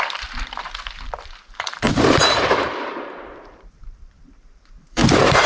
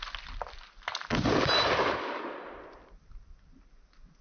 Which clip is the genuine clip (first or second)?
second